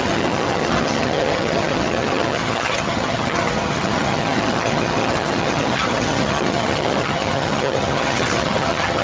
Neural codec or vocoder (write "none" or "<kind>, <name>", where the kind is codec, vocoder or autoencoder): vocoder, HiFi-GAN